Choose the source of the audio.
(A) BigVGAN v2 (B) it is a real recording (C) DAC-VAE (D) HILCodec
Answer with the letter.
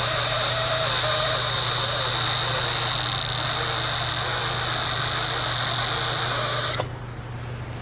B